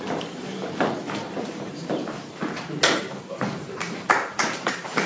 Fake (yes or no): yes